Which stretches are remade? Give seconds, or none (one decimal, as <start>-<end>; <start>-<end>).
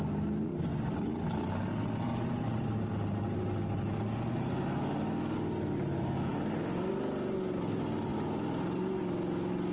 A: 0.7-2.9; 6.3-6.9; 8.1-9.0